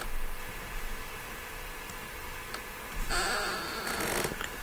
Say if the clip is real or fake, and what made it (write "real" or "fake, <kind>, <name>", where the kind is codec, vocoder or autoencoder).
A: real